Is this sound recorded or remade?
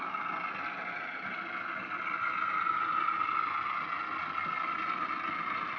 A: recorded